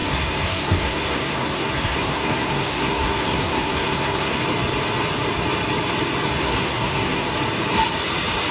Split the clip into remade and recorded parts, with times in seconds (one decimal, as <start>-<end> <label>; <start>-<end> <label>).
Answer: 0.0-4.4 remade; 4.4-6.4 recorded; 6.4-7.3 remade; 7.3-8.5 recorded